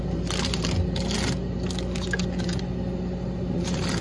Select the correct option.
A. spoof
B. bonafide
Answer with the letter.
B